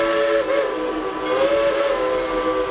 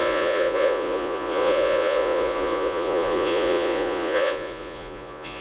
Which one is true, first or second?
first